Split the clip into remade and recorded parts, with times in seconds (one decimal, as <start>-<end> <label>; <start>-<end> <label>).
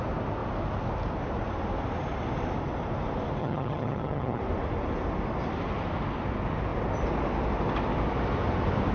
0.0-3.4 recorded; 3.4-4.4 remade; 4.4-8.9 recorded